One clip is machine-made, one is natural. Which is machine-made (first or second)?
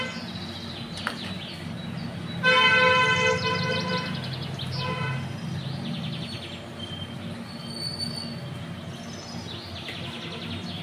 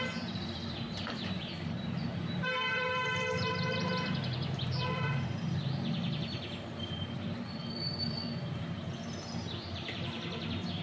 second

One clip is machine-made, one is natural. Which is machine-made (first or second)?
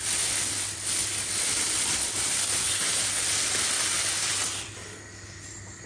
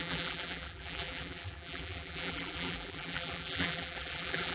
second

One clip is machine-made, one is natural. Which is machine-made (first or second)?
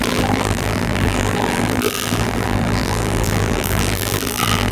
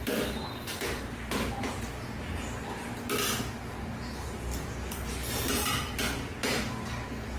first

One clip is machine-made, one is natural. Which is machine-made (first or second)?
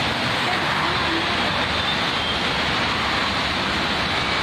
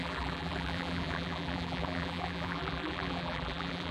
second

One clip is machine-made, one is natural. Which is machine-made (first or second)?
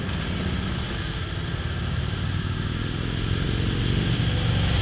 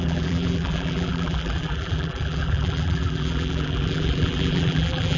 second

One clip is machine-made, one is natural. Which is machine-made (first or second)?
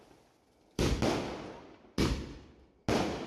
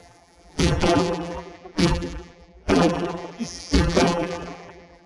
second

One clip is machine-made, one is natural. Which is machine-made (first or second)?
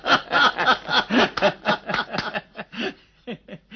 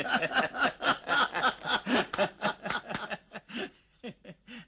second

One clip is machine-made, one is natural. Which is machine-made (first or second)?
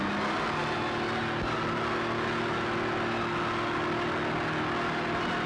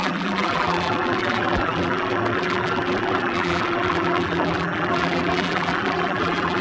second